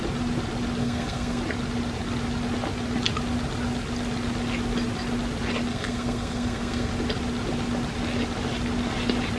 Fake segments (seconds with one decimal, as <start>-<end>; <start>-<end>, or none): 0.8-1.4; 5.7-6.9